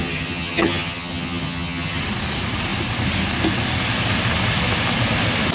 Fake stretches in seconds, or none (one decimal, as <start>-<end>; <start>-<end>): 0.0-2.0